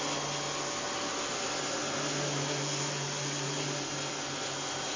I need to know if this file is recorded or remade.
recorded